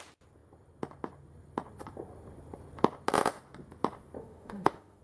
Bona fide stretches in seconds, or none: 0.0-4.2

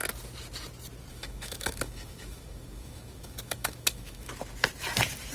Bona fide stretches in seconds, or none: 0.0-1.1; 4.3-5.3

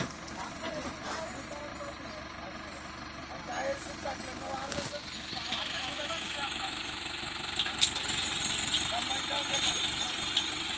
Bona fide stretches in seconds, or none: 0.0-5.8; 6.8-10.8

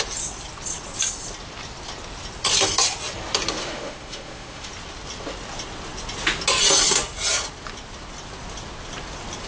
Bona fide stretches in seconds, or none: 0.0-3.6; 4.7-9.5